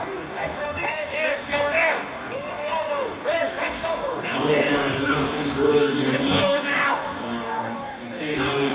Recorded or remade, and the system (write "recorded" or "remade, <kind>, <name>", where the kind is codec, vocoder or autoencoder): remade, codec, DAC